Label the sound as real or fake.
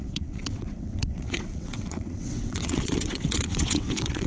fake